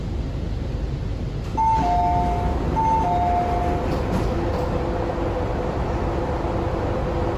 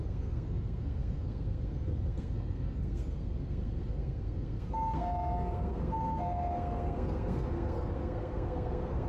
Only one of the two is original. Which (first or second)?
first